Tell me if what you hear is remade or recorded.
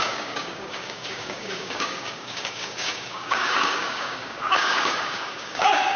remade